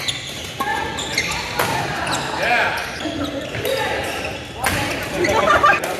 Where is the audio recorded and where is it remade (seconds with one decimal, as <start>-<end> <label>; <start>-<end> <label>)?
0.0-6.0 recorded